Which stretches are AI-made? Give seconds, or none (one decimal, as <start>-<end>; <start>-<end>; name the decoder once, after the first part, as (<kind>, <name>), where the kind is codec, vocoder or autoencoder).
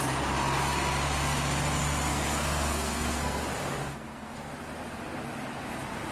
2.1-3.4 (codec, SNAC); 3.8-4.5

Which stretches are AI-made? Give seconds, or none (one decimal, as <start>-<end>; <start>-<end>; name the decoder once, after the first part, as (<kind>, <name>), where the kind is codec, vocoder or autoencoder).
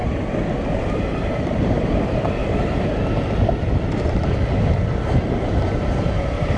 0.8-2.4 (vocoder, BigVGAN v2); 5.5-6.6